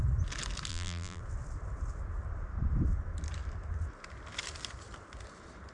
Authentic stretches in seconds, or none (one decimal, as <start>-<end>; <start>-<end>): 0.0-0.7; 1.2-5.7